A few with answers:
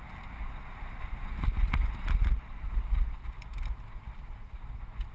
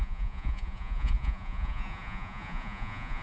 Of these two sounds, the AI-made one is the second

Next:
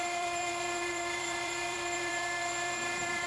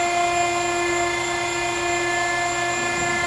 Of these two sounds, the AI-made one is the first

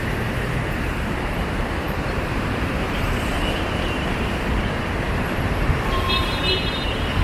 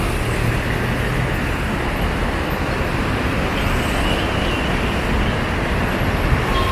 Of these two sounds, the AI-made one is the first